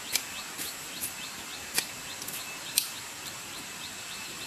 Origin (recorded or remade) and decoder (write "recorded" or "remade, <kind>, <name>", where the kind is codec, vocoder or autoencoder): recorded